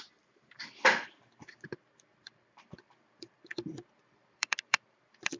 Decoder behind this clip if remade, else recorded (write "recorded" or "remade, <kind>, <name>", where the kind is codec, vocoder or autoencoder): remade, vocoder, BigVGAN v2